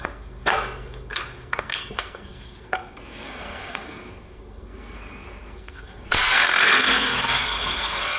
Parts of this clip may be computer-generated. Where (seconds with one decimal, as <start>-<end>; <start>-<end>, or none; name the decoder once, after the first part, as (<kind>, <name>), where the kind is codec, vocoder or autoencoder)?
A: 0.0-8.2 (codec, SNAC)